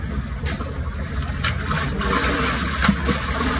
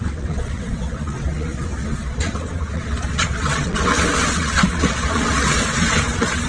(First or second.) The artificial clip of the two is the second